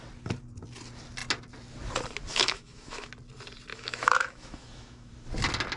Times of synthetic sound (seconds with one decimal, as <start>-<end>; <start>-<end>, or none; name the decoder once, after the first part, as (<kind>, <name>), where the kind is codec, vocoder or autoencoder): 2.3-3.1 (autoencoder, DAC-VAE); 3.7-5.1

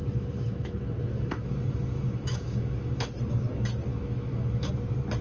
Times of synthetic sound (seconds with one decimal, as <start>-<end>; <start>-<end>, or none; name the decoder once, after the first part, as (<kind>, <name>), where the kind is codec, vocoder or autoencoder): 0.0-3.1 (autoencoder, DAC-VAE); 3.9-4.7